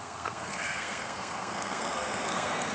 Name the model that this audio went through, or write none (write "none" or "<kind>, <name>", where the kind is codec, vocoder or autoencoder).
codec, SNAC